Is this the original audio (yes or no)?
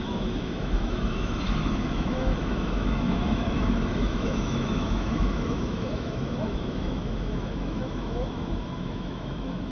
no